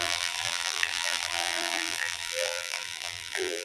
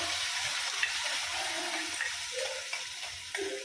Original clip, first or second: second